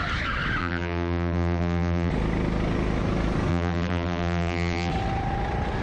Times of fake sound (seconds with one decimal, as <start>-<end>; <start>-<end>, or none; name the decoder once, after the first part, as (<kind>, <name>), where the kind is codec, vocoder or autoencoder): 0.6-2.1 (vocoder, BigVGAN v2); 3.5-4.9